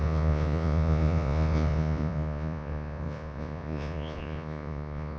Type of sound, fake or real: fake